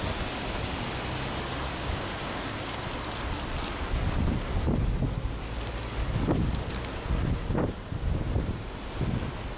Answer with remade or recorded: recorded